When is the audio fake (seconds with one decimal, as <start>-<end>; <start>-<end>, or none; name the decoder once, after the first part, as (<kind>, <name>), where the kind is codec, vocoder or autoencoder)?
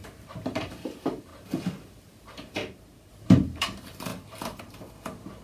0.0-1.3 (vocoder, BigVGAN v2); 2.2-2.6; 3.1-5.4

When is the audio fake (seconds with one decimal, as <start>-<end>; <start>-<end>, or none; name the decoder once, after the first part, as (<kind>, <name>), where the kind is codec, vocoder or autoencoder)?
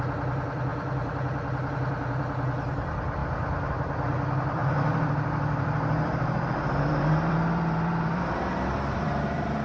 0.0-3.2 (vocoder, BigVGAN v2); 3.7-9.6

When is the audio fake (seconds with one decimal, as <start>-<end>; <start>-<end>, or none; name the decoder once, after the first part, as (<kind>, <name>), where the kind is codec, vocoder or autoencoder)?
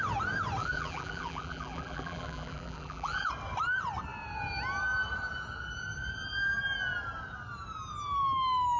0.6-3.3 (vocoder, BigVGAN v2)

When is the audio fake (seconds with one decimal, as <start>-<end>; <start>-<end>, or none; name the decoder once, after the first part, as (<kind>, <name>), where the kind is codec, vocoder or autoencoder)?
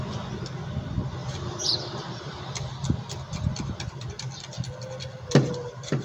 1.2-4.1 (vocoder, BigVGAN v2)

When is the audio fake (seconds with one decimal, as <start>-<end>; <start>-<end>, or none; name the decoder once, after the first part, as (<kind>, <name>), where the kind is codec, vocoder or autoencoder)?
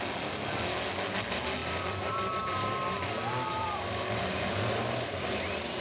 1.6-3.1 (vocoder, BigVGAN v2); 3.5-5.8